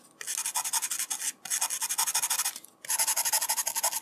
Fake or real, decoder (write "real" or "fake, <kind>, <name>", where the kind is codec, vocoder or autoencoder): real